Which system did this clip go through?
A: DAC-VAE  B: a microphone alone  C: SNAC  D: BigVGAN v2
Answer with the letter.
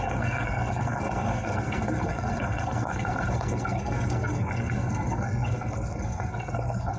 C